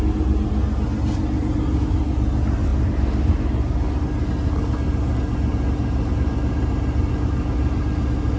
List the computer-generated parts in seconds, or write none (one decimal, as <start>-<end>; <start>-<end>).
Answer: none